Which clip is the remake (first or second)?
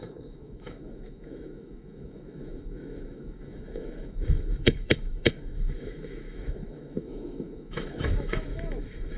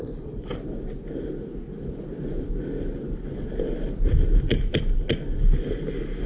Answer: first